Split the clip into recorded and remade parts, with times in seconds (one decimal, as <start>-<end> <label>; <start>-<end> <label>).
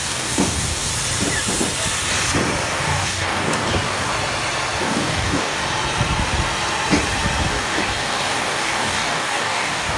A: 0.0-0.9 remade; 0.9-2.7 recorded; 2.7-4.1 remade; 4.1-4.8 recorded; 4.8-5.6 remade; 5.6-7.5 recorded; 7.5-10.0 remade